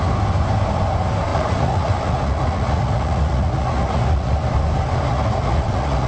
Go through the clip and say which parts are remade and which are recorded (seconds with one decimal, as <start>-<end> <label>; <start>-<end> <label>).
0.0-1.3 recorded; 1.3-4.3 remade; 4.3-5.1 recorded; 5.1-6.1 remade